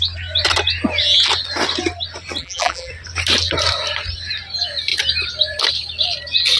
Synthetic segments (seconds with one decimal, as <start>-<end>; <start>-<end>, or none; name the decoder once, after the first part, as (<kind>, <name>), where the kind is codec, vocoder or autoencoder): 2.4-2.9 (vocoder, BigVGAN v2)